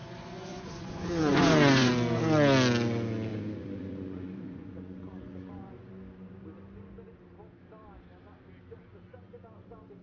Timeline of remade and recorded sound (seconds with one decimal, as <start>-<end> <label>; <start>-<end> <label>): 0.0-1.9 remade; 1.9-3.3 recorded; 3.3-5.9 remade; 5.9-10.0 recorded